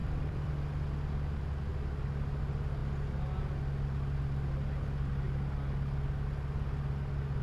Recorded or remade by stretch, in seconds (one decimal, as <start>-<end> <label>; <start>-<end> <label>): 0.0-0.5 remade; 0.5-7.4 recorded